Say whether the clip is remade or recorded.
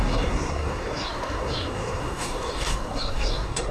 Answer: remade